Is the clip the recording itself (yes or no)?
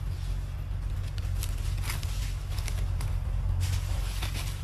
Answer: yes